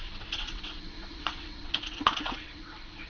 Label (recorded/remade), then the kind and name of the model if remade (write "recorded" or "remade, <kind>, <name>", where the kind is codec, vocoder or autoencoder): remade, vocoder, WaveNeXt